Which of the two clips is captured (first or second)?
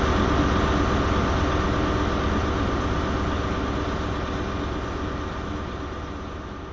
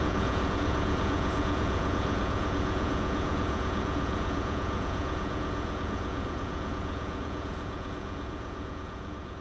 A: first